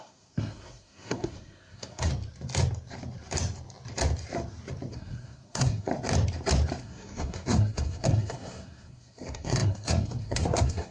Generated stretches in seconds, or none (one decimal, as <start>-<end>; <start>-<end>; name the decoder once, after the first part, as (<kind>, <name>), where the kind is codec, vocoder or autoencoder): 0.0-2.1 (codec, SNAC); 4.9-5.9; 6.8-10.9